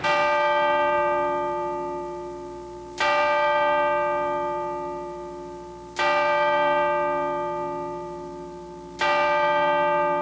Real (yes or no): yes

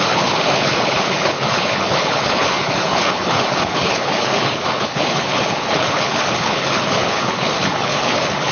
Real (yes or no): no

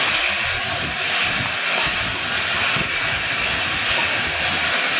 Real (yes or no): yes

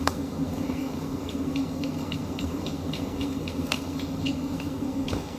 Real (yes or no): no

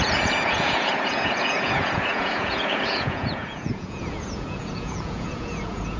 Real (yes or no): no